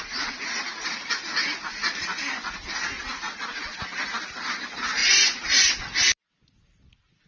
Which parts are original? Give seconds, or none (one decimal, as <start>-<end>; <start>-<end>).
0.0-7.3